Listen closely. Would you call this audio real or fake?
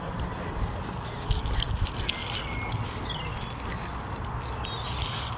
real